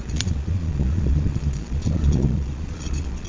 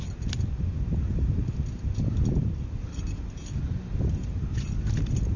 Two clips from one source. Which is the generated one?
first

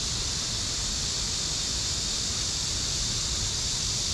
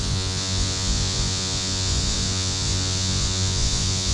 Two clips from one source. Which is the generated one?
second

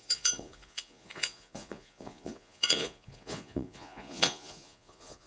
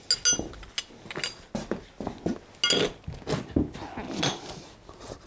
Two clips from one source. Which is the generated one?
first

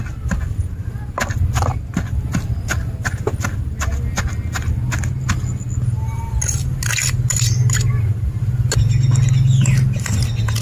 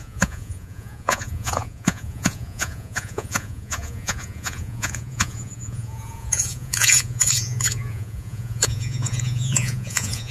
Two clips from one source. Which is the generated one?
second